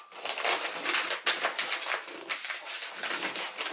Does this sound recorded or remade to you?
recorded